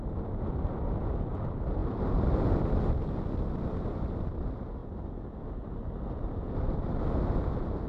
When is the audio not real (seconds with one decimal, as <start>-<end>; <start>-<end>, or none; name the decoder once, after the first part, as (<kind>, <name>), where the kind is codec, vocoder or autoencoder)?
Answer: none

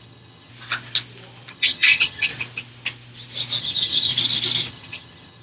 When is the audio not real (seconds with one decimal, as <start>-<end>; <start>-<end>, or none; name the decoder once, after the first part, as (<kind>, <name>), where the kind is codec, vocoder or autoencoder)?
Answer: 0.0-0.5 (vocoder, HiFi-GAN); 1.5-2.3; 3.6-4.1; 4.7-5.4

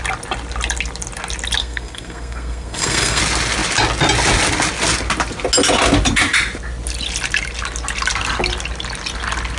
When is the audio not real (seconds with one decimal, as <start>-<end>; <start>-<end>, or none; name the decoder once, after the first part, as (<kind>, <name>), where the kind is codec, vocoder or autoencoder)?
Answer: 1.6-3.2 (codec, SNAC)

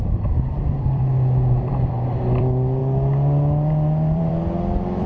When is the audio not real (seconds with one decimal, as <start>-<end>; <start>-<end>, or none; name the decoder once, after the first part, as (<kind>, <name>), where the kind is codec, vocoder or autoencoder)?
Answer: 0.0-1.0 (vocoder, BigVGAN v2); 1.6-5.1

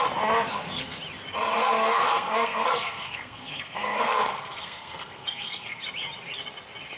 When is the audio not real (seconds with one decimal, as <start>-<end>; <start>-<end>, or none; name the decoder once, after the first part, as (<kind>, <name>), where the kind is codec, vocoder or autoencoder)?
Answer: 0.5-1.0 (codec, SNAC); 1.6-5.8